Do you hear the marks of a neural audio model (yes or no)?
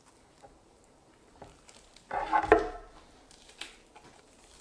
yes